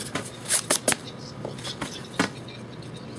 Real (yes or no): yes